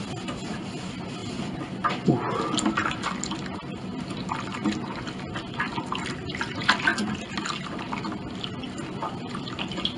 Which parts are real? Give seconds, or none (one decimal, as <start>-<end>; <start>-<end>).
0.0-10.0